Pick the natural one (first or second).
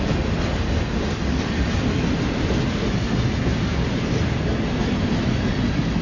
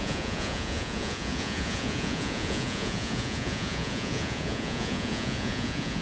first